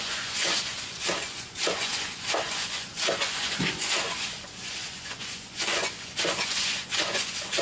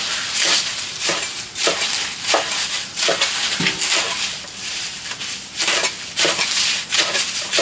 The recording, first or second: second